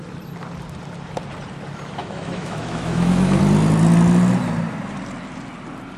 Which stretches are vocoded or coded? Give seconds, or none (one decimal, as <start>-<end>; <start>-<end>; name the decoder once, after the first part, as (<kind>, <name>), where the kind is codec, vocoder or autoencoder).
2.0-3.4 (autoencoder, DAC-VAE)